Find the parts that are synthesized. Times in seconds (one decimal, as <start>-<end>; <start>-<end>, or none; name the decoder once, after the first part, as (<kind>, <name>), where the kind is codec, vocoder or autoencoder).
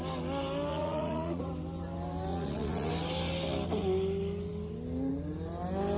0.7-1.4 (vocoder, Vocos); 2.3-2.9